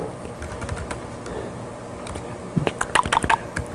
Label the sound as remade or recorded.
recorded